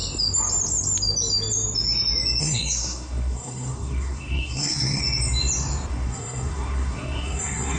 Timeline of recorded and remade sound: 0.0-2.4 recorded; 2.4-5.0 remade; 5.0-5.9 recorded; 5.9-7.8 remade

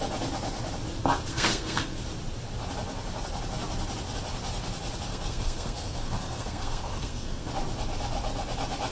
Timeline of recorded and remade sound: 0.0-1.3 recorded; 1.3-2.0 remade; 2.0-5.1 recorded; 5.1-7.5 remade; 7.5-8.9 recorded

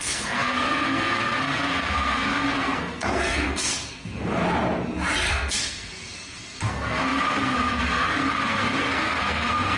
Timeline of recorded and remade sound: 0.0-4.4 remade; 4.4-5.3 recorded; 5.3-9.8 remade